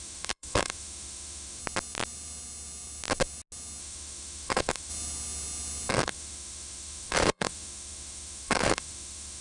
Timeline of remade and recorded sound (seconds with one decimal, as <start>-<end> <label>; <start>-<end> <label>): 0.0-1.6 remade; 1.6-3.8 recorded; 3.8-4.9 remade; 4.9-5.9 recorded; 5.9-9.4 remade